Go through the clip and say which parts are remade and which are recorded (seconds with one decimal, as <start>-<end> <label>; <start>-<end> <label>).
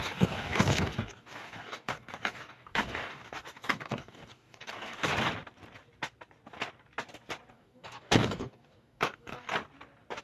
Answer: 0.0-5.1 remade; 5.1-7.5 recorded; 7.5-9.5 remade; 9.5-10.2 recorded